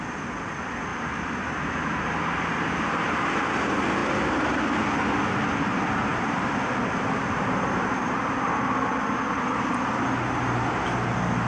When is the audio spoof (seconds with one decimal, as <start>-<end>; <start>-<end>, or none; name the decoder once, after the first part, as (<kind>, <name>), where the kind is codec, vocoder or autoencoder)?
0.9-3.5 (vocoder, BigVGAN v2); 4.0-4.8; 6.1-9.0